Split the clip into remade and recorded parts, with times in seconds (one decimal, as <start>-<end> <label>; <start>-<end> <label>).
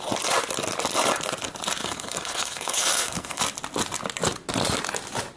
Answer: 0.0-1.8 recorded; 1.8-3.4 remade; 3.4-5.4 recorded